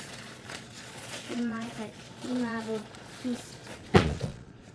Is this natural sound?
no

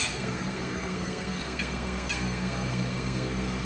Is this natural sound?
no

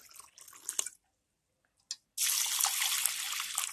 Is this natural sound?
yes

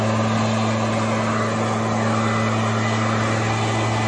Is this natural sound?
yes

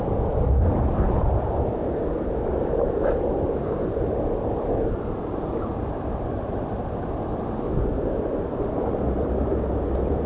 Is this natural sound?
no